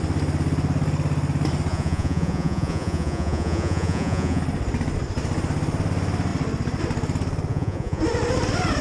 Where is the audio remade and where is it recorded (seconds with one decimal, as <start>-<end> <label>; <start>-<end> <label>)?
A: 0.0-1.7 recorded; 1.7-4.4 remade; 4.4-7.5 recorded; 7.5-8.0 remade; 8.0-8.8 recorded